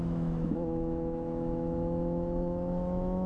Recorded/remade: remade